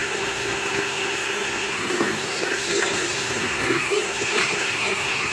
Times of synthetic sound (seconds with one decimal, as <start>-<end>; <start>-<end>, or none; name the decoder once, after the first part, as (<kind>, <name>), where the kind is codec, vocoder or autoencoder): 0.0-5.3 (codec, SNAC)

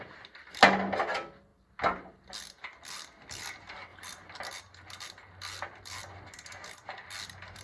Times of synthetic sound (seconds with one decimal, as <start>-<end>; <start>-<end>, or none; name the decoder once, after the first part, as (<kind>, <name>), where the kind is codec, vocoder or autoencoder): none

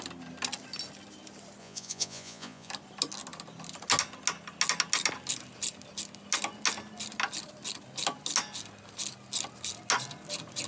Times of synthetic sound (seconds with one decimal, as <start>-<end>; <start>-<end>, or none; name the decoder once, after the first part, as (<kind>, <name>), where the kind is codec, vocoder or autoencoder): 1.6-2.7 (vocoder, Vocos)

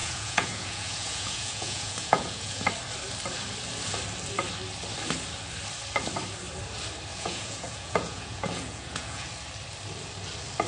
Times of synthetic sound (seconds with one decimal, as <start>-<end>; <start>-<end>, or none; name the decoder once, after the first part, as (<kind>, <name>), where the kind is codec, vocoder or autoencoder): 0.0-2.7 (vocoder, Vocos); 7.1-9.3

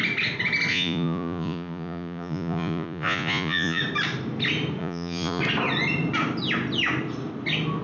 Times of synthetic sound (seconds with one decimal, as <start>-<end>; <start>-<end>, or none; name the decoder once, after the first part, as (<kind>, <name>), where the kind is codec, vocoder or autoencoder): 0.7-3.8 (vocoder, Vocos); 4.8-5.4

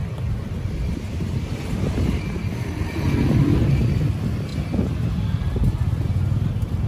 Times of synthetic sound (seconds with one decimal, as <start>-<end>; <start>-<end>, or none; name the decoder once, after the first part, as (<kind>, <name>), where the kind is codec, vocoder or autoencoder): 0.0-3.7 (vocoder, BigVGAN v2)